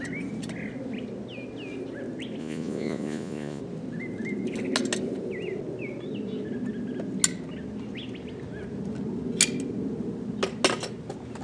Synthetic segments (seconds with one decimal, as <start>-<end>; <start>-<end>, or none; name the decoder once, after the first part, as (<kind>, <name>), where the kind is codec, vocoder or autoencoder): 2.4-3.6 (vocoder, Vocos)